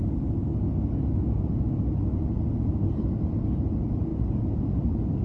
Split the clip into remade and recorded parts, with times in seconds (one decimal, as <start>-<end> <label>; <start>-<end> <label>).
0.0-5.2 recorded